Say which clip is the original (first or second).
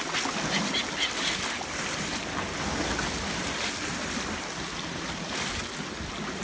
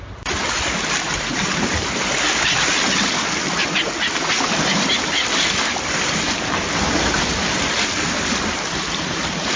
first